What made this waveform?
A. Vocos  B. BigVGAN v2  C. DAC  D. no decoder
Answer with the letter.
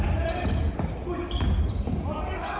D